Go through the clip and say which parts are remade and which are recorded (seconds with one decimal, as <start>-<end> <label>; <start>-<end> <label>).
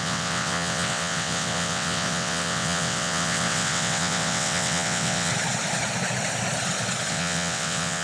0.0-5.3 remade; 5.3-7.1 recorded; 7.1-8.0 remade